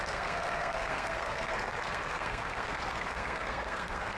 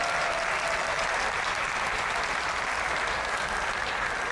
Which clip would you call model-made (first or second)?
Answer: first